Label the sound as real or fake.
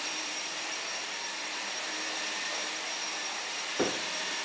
fake